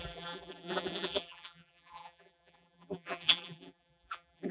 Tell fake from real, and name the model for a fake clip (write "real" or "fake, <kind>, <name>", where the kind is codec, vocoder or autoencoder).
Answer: fake, vocoder, BigVGAN v2